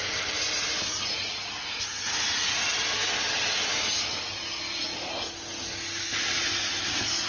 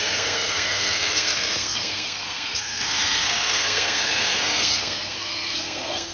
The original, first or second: first